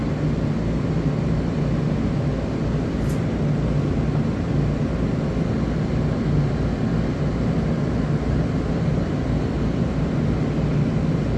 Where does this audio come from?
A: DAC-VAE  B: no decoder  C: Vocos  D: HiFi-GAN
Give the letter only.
B